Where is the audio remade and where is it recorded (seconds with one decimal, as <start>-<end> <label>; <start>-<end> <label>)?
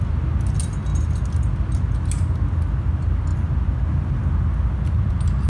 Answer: 0.0-5.5 recorded